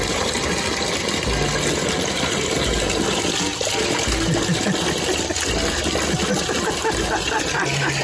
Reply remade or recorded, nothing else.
recorded